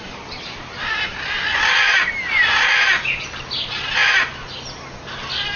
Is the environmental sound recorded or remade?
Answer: recorded